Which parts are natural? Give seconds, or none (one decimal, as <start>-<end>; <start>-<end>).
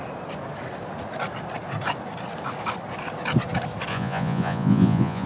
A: 0.0-3.9